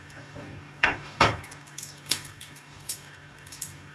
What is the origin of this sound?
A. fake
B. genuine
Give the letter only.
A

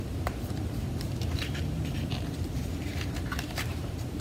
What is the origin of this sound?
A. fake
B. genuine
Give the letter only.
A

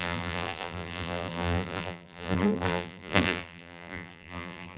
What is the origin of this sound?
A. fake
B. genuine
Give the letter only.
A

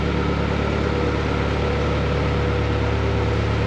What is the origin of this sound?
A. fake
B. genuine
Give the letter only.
B